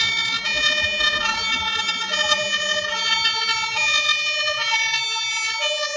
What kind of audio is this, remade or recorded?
remade